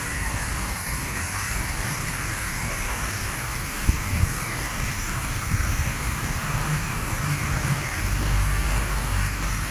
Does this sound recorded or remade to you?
remade